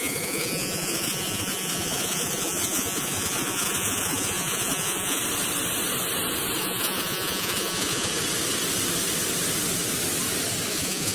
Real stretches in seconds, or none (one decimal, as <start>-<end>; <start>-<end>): 5.2-6.6; 8.1-10.7